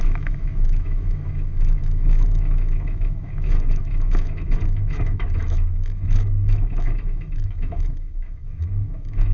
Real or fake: fake